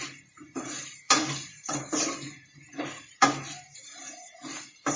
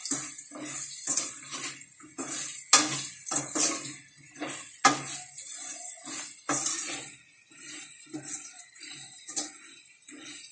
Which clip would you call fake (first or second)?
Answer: first